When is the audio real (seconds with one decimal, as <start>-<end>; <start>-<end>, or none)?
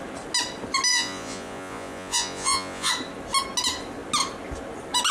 0.0-0.9; 2.9-5.1